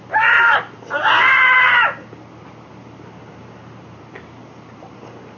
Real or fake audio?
real